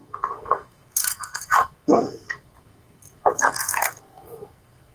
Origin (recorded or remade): remade